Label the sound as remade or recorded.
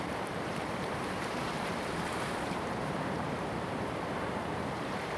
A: remade